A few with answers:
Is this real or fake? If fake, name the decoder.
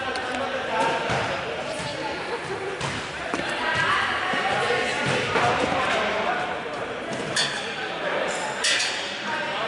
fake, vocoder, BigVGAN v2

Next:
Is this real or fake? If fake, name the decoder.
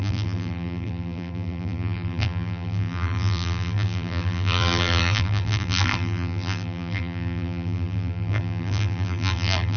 fake, vocoder, BigVGAN v2